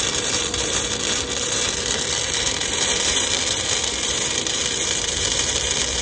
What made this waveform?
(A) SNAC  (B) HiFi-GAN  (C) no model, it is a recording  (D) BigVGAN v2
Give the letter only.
D